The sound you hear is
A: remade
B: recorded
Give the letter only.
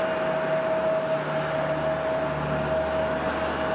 B